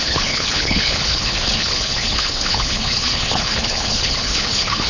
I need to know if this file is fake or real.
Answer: fake